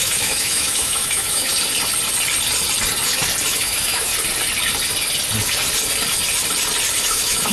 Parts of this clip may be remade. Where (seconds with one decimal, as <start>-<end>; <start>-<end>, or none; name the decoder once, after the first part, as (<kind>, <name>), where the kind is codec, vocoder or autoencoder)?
0.0-1.5 (autoencoder, DAC-VAE); 3.5-4.1; 7.0-7.5